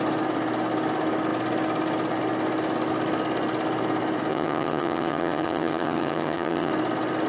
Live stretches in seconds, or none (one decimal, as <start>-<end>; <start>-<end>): 0.0-4.3; 6.7-7.3